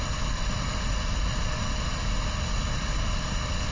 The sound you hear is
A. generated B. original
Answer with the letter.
B